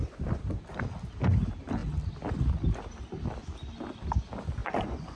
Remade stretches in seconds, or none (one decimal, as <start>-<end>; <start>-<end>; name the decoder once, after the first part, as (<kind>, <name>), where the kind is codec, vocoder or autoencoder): 4.6-5.2 (vocoder, Vocos)